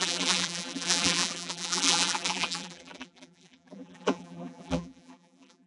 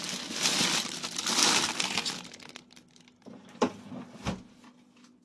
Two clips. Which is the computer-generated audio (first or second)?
first